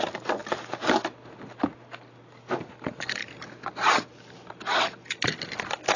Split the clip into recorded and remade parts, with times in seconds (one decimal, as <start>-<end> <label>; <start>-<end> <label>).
0.0-3.2 recorded; 3.2-3.9 remade; 3.9-6.0 recorded